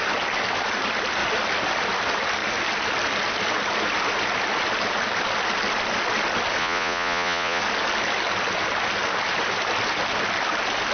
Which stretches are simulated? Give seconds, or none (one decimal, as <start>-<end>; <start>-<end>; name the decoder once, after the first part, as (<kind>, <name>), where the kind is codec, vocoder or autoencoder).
6.6-7.6 (vocoder, Vocos)

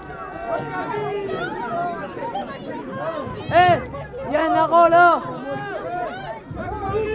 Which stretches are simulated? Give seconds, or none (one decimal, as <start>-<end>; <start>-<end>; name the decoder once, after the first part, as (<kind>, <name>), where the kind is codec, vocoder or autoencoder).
none

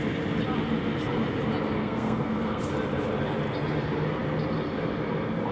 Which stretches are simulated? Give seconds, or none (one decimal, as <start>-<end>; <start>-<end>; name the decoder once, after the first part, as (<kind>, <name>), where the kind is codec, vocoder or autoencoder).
1.8-2.6 (codec, SNAC)